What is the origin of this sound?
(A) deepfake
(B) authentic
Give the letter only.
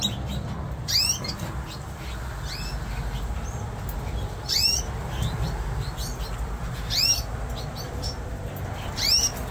B